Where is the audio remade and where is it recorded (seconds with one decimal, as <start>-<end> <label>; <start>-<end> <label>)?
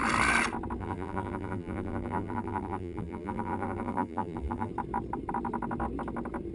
0.0-0.8 recorded; 0.8-4.7 remade; 4.7-6.5 recorded